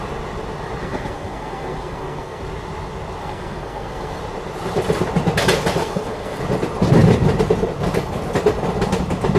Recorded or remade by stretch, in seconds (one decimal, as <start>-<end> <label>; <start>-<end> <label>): 0.0-0.8 recorded; 0.8-2.4 remade; 2.4-3.2 recorded; 3.2-4.2 remade; 4.2-5.8 recorded; 5.8-6.4 remade; 6.4-9.4 recorded